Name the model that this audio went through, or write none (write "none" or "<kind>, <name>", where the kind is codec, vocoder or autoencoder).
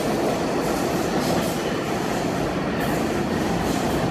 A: none